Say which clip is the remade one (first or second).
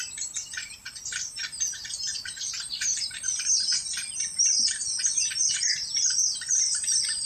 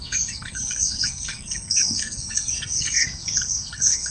second